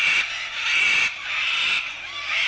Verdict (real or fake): fake